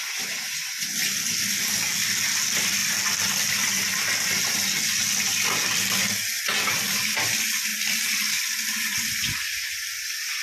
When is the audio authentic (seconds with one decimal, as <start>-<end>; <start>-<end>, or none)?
0.0-10.4